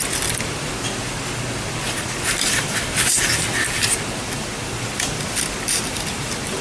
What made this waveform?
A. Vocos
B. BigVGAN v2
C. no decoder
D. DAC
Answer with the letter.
B